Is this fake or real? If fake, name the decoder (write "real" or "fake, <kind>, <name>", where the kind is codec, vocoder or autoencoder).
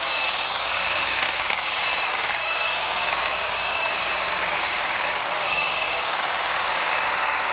fake, codec, DAC